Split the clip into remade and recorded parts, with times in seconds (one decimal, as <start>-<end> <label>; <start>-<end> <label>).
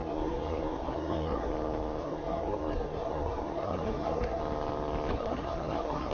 0.0-1.5 remade; 1.5-2.0 recorded; 2.0-4.4 remade; 4.4-5.1 recorded; 5.1-6.1 remade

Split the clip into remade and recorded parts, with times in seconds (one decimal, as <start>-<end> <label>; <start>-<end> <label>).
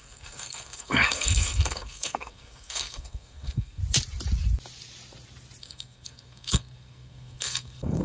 0.0-3.8 remade; 3.8-5.6 recorded; 5.6-8.0 remade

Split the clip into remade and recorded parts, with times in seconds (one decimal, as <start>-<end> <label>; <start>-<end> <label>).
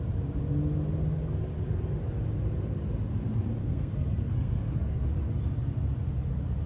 0.0-3.6 recorded; 3.6-5.1 remade; 5.1-6.7 recorded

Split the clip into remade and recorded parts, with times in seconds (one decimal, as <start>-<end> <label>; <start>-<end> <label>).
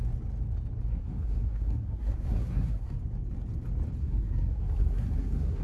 0.0-0.9 recorded; 0.9-3.0 remade; 3.0-4.0 recorded; 4.0-5.6 remade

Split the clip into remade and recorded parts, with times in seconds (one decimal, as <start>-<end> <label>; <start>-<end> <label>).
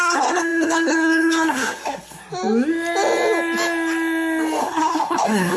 0.0-2.2 remade; 2.2-4.6 recorded; 4.6-5.6 remade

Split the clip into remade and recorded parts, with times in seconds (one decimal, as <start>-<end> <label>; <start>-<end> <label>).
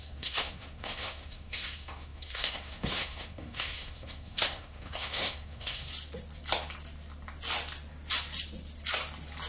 0.0-5.9 remade; 5.9-9.5 recorded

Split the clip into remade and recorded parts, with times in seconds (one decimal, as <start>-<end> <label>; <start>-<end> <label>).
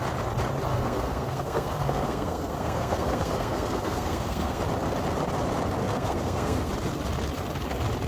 0.0-0.7 recorded; 0.7-4.6 remade; 4.6-5.8 recorded; 5.8-6.7 remade; 6.7-8.1 recorded